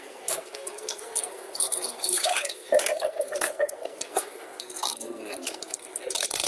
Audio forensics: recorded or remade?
remade